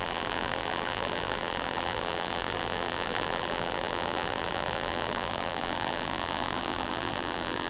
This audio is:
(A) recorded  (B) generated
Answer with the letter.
B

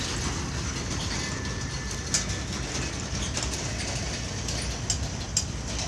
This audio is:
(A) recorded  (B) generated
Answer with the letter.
A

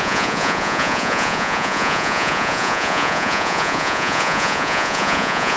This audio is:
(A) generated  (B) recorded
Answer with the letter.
A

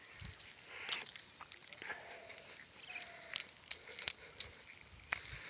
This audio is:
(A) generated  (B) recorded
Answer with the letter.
B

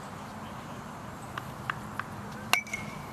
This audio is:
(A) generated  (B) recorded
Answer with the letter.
B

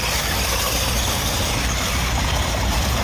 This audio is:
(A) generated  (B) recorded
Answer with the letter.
B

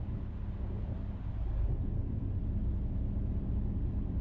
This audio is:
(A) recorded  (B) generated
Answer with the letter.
B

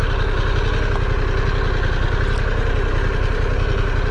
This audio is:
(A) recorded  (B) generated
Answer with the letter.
A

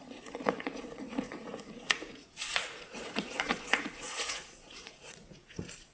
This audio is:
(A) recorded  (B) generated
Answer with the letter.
B